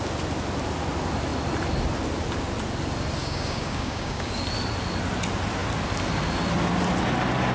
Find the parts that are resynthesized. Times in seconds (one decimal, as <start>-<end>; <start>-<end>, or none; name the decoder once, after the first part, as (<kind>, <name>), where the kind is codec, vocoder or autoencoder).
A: 3.2-4.3 (codec, DAC)